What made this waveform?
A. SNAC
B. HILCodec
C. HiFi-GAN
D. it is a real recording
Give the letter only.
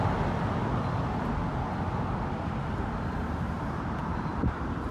D